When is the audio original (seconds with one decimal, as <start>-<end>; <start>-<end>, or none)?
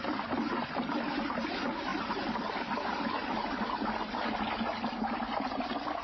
0.0-6.0